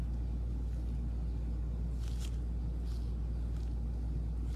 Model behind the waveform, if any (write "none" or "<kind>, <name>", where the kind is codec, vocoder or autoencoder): none